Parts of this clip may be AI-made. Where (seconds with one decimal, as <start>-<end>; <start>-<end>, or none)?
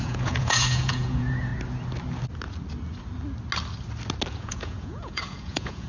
0.0-1.5; 4.3-5.9